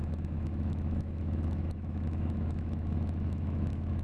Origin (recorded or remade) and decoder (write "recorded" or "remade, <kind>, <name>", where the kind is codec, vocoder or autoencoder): remade, autoencoder, DAC-VAE